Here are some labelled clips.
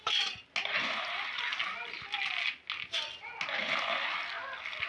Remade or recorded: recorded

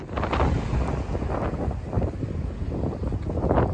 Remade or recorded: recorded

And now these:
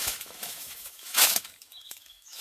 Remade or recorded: remade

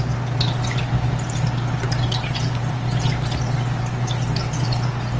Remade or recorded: recorded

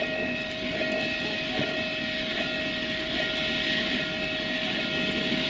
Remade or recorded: recorded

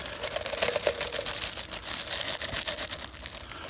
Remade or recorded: recorded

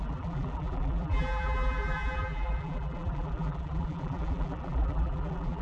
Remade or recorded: remade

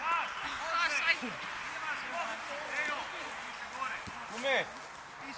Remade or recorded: recorded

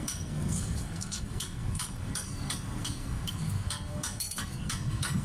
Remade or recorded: remade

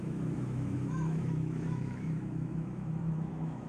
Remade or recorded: remade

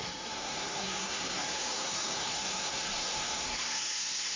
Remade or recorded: remade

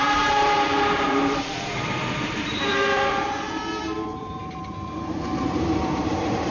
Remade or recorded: remade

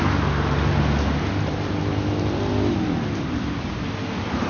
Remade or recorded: recorded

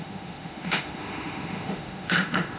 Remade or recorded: remade